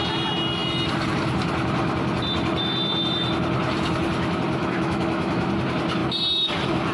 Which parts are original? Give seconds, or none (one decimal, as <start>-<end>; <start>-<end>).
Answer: 0.0-4.6; 5.5-6.9